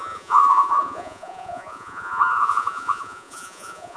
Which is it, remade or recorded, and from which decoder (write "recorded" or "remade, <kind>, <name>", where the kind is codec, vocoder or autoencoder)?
remade, vocoder, Vocos